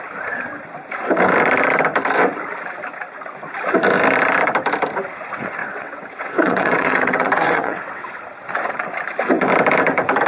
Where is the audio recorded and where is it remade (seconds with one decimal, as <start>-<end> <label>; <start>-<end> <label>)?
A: 0.0-5.6 recorded; 5.6-8.2 remade; 8.2-10.3 recorded